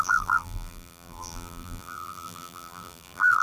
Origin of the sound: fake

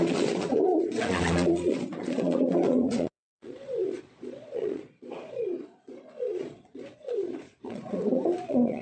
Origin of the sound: fake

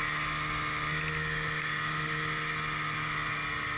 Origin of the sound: real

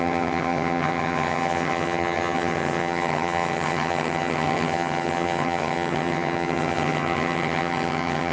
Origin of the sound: fake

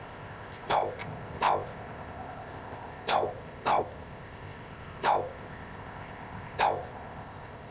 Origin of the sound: fake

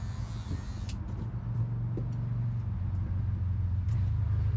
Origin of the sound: real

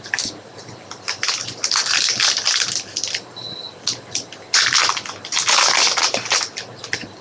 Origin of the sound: real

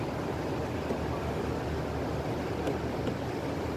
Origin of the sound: real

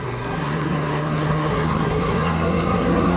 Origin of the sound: fake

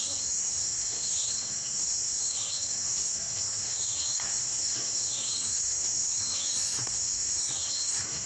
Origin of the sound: fake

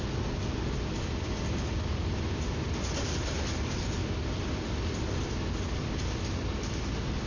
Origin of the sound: real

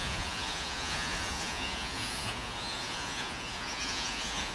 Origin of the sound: fake